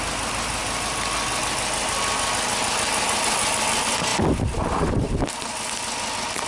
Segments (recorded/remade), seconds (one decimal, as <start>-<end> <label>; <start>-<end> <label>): 0.0-6.5 recorded